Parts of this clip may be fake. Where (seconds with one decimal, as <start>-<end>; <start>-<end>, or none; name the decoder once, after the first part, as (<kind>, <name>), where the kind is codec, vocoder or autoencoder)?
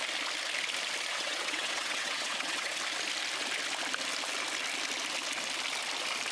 1.1-2.7 (vocoder, WaveNeXt)